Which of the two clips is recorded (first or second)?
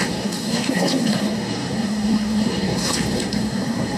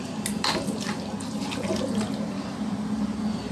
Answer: second